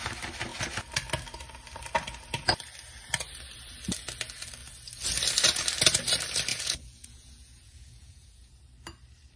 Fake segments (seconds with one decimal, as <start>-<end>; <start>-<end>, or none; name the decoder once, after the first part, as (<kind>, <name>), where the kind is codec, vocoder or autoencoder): 6.5-8.6 (vocoder, Vocos)